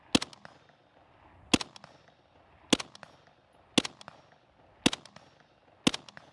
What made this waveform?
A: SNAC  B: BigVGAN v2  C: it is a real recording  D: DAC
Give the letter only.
C